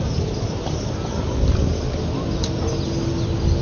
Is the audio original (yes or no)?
yes